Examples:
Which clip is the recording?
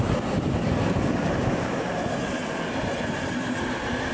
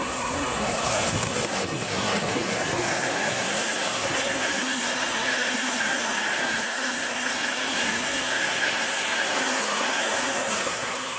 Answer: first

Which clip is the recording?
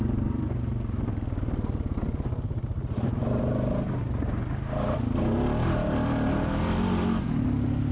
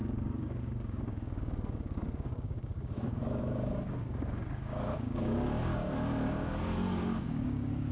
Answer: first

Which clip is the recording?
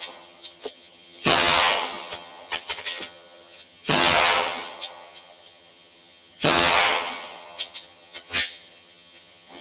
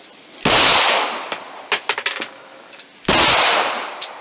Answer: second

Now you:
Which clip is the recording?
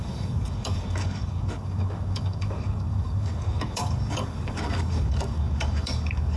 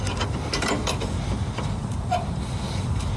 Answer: second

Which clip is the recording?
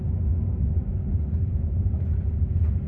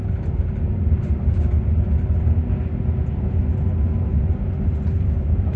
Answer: second